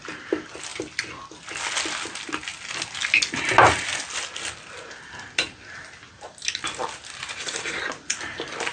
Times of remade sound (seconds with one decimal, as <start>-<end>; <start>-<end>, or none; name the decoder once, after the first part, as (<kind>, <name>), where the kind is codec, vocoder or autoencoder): none

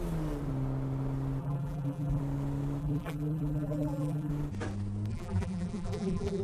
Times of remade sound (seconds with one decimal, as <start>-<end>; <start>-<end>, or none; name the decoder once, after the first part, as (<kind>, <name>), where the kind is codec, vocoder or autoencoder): 1.4-2.2 (vocoder, BigVGAN v2); 2.8-4.3; 5.1-6.4